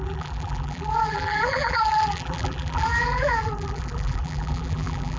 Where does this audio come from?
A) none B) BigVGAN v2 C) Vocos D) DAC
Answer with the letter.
B